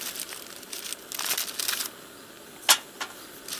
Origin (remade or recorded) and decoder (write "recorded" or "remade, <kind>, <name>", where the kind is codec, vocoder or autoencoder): recorded